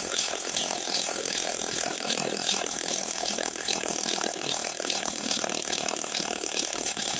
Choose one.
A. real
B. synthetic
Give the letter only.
B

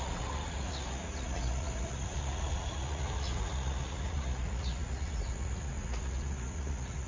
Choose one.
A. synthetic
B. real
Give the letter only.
A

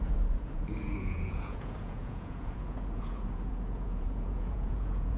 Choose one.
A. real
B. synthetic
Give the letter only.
B